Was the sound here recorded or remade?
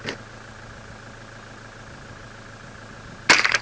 recorded